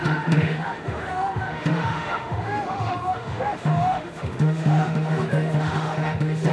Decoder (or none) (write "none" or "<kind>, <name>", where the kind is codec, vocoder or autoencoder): autoencoder, DAC-VAE